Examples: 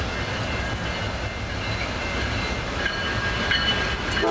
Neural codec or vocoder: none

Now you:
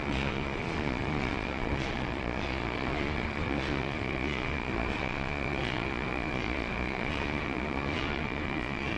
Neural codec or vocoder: vocoder, Vocos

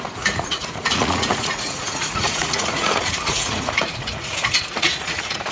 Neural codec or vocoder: vocoder, Vocos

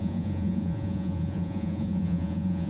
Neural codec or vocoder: vocoder, Vocos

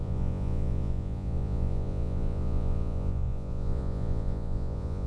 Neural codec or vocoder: vocoder, Vocos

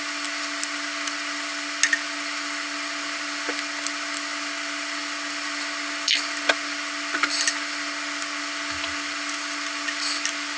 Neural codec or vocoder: none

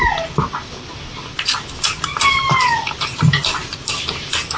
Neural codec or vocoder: none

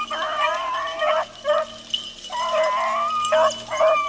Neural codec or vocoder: none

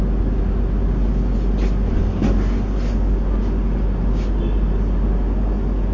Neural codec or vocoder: none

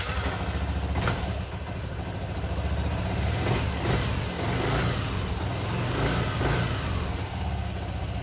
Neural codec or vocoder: none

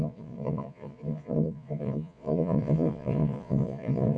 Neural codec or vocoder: vocoder, Vocos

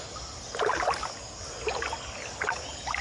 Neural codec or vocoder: none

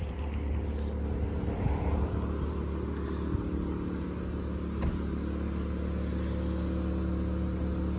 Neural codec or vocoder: none